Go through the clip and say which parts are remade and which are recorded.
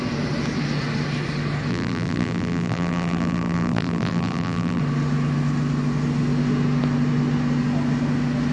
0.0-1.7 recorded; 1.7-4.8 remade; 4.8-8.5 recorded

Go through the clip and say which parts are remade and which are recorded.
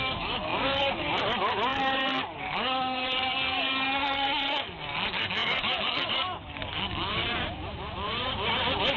0.0-7.2 remade; 7.2-9.0 recorded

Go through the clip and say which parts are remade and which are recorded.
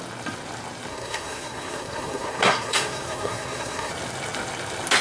0.0-0.9 recorded; 0.9-3.9 remade; 3.9-5.0 recorded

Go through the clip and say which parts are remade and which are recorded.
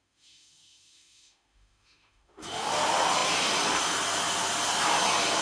0.0-2.7 remade; 2.7-5.4 recorded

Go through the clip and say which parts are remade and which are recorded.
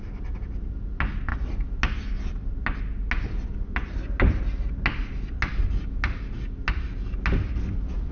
0.0-8.1 recorded